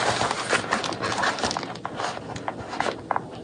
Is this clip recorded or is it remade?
recorded